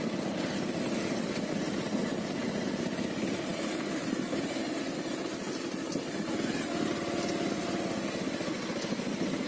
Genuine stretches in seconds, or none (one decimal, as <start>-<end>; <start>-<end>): 0.0-9.5